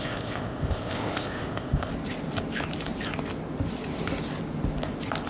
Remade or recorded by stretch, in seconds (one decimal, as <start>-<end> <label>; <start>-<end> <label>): 0.0-1.9 remade; 1.9-5.3 recorded